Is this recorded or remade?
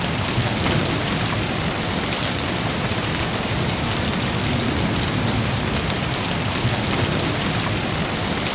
remade